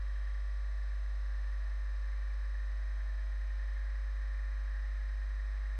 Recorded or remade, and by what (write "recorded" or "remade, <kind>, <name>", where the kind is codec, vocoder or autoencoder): recorded